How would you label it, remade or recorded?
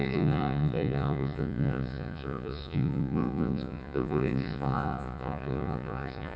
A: remade